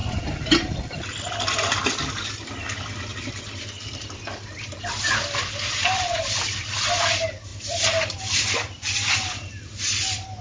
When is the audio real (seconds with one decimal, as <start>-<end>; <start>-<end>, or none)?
0.0-10.4